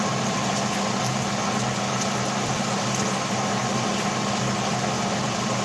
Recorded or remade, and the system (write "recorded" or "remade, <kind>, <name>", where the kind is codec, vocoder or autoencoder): recorded